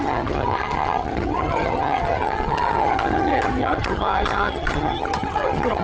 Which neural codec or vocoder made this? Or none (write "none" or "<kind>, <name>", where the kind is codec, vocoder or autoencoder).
vocoder, HiFi-GAN